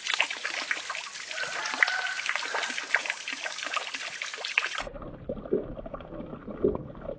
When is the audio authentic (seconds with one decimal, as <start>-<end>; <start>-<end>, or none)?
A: 0.0-3.0; 3.7-4.9; 6.4-7.2